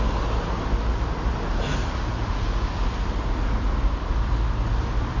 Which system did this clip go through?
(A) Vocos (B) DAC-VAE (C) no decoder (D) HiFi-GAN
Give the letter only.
C